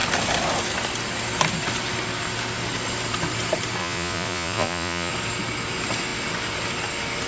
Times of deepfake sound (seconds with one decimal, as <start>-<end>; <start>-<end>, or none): 3.8-5.1